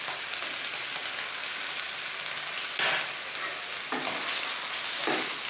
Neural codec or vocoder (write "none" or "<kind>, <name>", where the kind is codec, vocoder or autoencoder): none